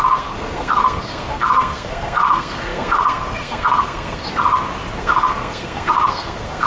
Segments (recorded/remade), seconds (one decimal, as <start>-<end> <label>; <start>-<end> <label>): 0.0-4.2 remade; 4.2-5.0 recorded; 5.0-6.7 remade